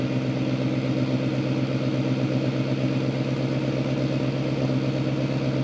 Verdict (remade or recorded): recorded